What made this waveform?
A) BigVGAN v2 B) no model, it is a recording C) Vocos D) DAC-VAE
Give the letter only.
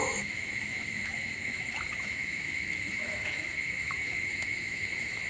D